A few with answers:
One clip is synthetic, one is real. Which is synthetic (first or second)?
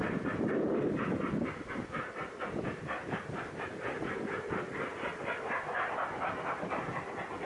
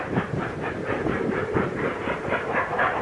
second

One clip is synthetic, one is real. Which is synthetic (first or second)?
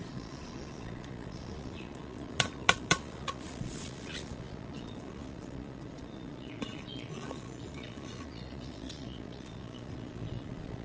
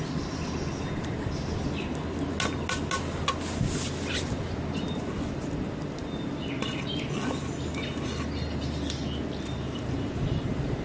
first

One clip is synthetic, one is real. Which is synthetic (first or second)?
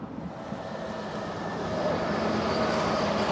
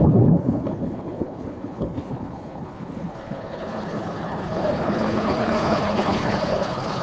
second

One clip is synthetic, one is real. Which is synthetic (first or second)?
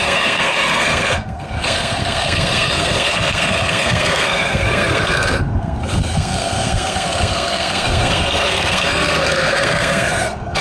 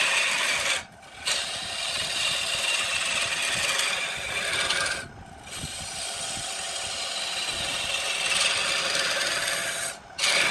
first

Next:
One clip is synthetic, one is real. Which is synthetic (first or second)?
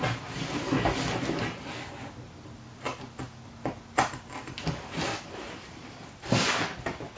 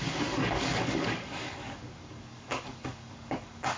second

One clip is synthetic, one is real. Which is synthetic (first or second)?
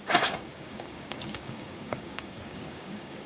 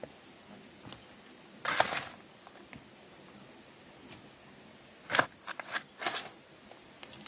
first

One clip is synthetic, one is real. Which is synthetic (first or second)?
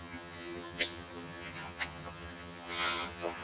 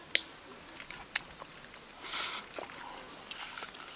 first